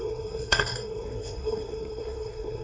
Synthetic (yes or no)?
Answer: yes